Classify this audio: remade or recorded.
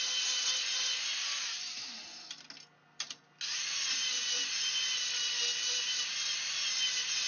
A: recorded